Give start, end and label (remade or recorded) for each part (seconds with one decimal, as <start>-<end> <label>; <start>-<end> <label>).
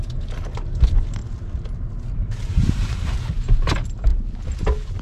0.0-1.2 remade; 1.2-2.1 recorded; 2.1-4.1 remade; 4.1-5.0 recorded